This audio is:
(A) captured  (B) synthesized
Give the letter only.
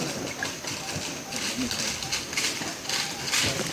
A